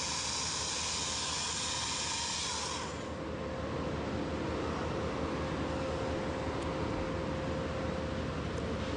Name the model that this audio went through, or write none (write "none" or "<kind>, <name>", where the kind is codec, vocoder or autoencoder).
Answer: none